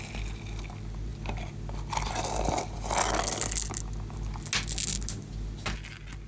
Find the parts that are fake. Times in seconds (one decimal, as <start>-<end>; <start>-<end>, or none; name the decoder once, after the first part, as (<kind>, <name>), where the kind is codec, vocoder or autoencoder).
none